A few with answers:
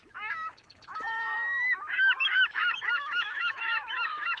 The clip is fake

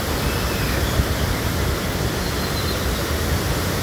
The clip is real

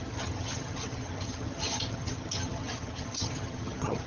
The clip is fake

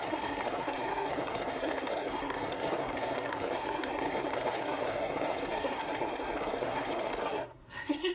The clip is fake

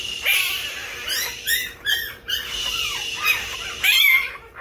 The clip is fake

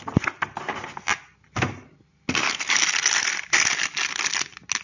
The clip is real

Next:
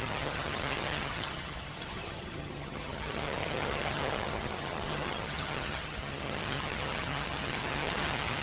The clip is fake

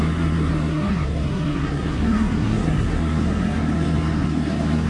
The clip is fake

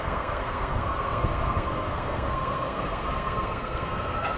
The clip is fake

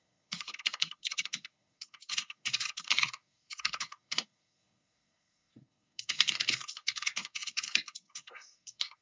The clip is fake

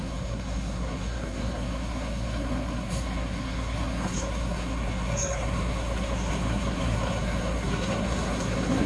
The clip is fake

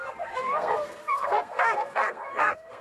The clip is fake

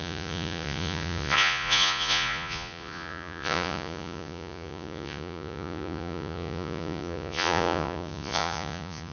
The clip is fake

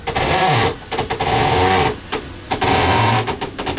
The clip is real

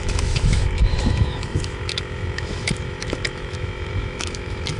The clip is fake